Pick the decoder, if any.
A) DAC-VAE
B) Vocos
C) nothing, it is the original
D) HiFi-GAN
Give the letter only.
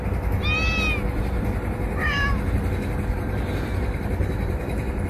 C